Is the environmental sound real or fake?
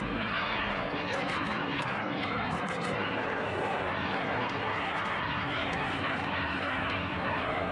fake